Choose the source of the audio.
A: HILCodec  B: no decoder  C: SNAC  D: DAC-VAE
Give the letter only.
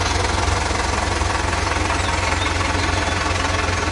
B